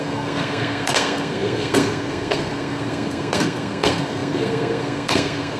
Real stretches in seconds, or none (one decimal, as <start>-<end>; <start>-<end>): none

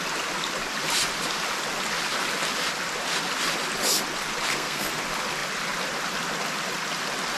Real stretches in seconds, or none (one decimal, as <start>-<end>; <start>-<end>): 0.0-4.5; 5.0-7.4

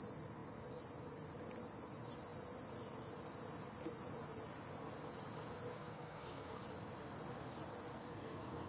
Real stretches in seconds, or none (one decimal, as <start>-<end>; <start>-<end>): 0.0-5.7; 6.6-7.9

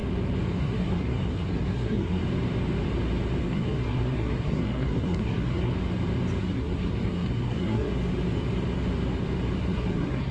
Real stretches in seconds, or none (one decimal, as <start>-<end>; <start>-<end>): 0.0-0.6; 2.2-3.4; 5.7-6.4; 7.9-9.6

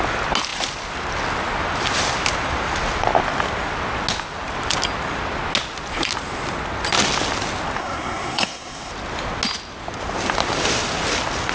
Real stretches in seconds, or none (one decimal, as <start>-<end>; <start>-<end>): 0.0-7.8; 8.9-11.5

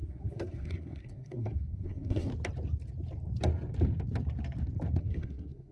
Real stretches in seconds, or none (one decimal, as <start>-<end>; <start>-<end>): 2.3-5.0

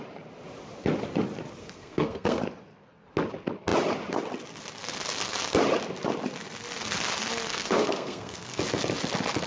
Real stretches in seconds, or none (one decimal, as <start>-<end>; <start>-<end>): 0.0-1.6; 2.4-7.5; 8.6-9.5

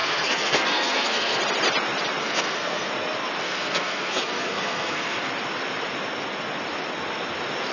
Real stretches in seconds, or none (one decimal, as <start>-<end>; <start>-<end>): 1.4-2.2; 2.9-3.4; 5.3-7.7